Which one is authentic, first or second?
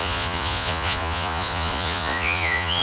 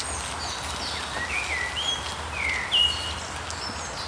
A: second